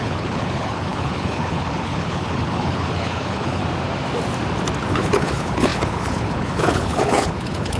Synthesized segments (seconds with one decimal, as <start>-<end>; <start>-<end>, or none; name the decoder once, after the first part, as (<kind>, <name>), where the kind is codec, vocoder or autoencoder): 0.0-3.6 (codec, HILCodec); 4.9-7.8